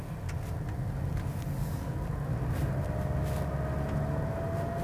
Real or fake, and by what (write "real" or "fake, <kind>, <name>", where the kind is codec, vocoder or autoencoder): real